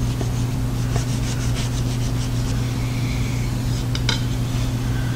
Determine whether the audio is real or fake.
real